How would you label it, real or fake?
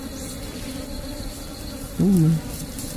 real